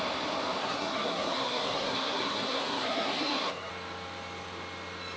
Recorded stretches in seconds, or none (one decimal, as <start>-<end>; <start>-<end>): 0.0-0.6; 3.7-5.2